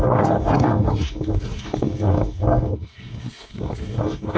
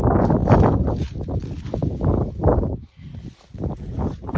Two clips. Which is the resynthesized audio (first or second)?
first